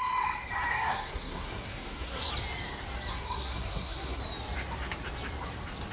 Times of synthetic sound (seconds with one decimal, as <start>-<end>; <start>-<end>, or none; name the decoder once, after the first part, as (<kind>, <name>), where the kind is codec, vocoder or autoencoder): 0.7-2.3 (codec, SNAC); 3.1-4.2

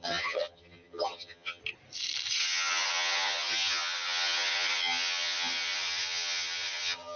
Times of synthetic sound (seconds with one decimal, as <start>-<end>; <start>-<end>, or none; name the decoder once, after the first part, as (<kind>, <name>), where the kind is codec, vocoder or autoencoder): 0.0-1.6 (vocoder, HiFi-GAN); 2.4-7.2